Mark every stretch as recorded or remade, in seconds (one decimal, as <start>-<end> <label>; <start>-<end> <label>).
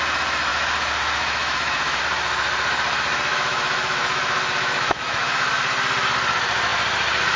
0.0-0.5 recorded; 0.5-2.0 remade; 2.0-3.3 recorded; 3.3-5.5 remade; 5.5-7.4 recorded